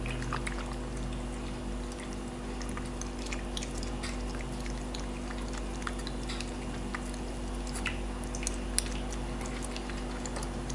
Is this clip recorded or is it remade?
recorded